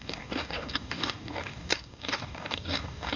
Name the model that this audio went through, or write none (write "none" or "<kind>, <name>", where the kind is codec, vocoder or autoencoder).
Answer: codec, DAC